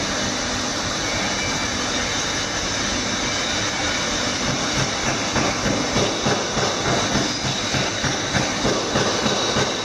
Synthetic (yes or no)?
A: no